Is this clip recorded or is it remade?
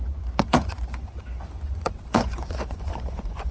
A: remade